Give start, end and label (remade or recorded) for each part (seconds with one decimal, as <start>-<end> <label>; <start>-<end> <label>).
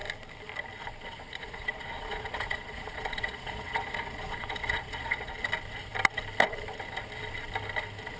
0.0-1.4 recorded; 1.4-5.3 remade; 5.3-8.2 recorded